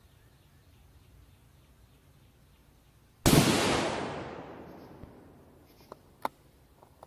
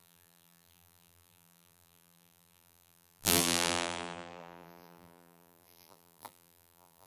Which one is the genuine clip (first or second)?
first